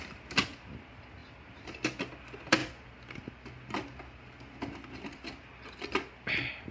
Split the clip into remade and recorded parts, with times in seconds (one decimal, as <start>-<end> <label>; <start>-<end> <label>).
0.0-6.7 recorded